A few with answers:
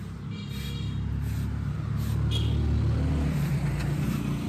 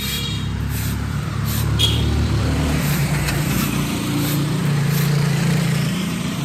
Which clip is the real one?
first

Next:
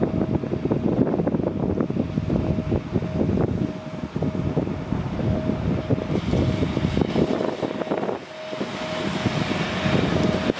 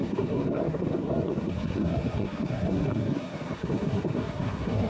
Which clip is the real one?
first